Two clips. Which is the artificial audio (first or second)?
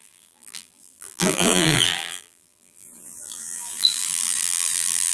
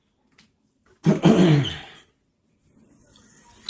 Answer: first